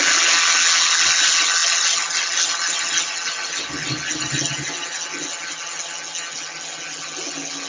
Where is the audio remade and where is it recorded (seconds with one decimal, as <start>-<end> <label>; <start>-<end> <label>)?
0.0-7.7 recorded